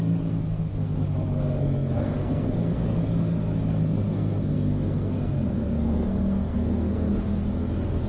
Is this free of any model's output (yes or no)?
no